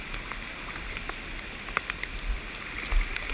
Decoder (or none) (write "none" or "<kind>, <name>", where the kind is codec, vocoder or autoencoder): none